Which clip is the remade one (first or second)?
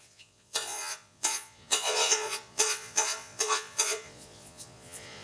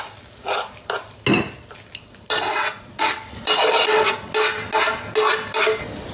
first